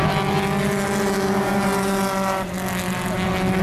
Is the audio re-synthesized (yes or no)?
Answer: no